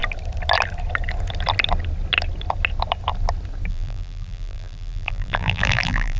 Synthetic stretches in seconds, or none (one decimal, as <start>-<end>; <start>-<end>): 3.7-6.2